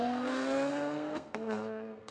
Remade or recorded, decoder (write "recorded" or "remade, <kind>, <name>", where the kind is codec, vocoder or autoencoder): remade, codec, SNAC